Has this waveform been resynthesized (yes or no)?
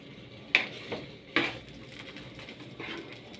no